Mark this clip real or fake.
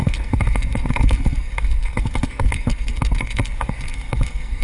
fake